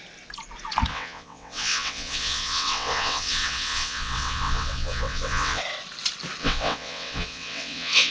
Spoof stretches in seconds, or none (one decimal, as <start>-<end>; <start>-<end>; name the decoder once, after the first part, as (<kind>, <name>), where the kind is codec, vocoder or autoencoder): 0.9-5.6 (vocoder, WaveNeXt); 6.4-8.1